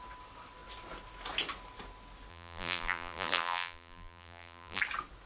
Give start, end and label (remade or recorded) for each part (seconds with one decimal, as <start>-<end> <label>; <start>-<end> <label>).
0.0-2.3 recorded; 2.3-4.8 remade; 4.8-5.3 recorded